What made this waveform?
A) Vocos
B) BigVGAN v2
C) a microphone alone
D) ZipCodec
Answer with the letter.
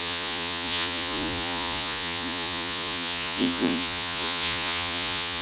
A